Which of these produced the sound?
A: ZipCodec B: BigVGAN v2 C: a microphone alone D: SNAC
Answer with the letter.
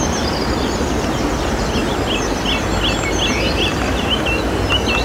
C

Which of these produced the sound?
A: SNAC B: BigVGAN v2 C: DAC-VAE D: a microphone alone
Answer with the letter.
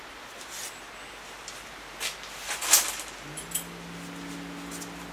D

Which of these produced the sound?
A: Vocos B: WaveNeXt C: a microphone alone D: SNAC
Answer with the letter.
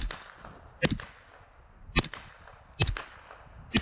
C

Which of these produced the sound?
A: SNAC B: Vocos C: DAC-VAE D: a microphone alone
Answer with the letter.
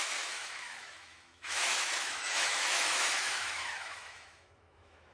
C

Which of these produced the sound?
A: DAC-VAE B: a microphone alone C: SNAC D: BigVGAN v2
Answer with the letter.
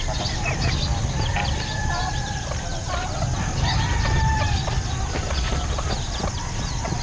B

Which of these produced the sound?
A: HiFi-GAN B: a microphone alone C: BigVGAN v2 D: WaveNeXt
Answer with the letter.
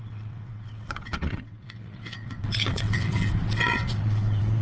D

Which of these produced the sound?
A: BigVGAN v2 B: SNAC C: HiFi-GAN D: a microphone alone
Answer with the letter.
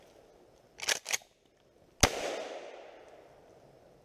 D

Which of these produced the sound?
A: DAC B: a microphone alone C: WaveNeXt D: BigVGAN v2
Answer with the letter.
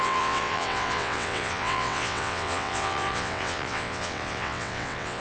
C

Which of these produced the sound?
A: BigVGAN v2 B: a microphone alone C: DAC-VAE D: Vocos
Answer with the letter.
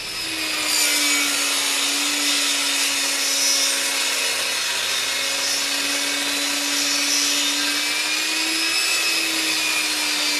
B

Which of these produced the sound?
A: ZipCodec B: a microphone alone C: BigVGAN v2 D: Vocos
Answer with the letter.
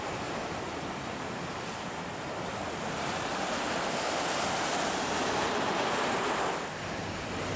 B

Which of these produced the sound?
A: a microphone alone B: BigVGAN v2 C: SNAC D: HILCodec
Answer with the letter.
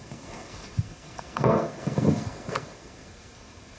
C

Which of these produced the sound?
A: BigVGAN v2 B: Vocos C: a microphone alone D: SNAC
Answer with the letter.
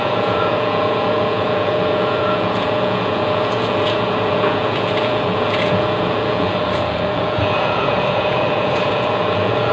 B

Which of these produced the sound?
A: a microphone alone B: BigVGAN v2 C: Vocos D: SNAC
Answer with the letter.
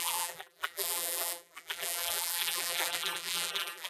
B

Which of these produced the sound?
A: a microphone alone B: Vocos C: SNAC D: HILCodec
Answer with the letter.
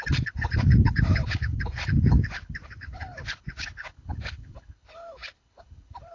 D